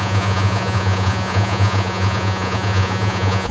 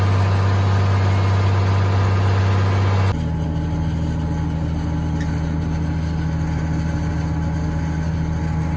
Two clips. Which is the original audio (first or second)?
second